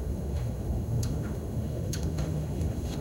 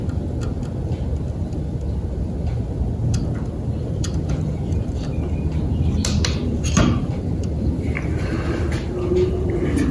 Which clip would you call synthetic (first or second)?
first